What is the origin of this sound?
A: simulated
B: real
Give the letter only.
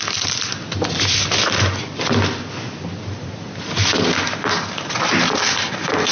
B